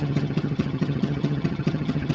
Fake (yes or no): yes